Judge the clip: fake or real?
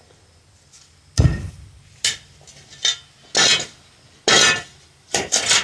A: real